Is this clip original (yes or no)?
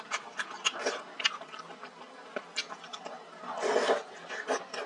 yes